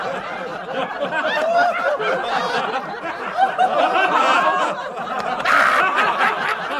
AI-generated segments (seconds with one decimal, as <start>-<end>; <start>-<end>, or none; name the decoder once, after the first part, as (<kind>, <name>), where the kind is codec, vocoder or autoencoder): 0.5-4.6 (vocoder, BigVGAN v2)